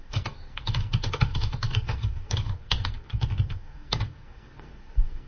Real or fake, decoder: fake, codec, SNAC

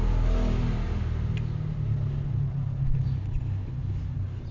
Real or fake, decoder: real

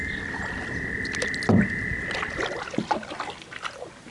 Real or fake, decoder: real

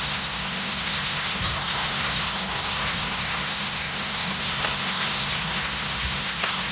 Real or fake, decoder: fake, codec, SNAC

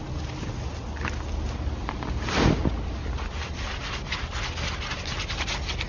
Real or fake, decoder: real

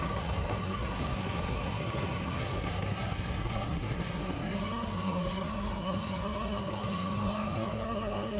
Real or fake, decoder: fake, codec, SNAC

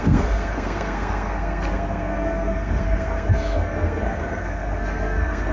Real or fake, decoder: fake, codec, SNAC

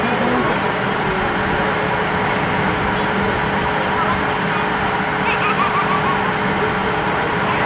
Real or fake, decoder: real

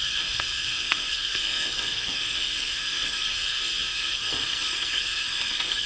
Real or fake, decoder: fake, codec, SNAC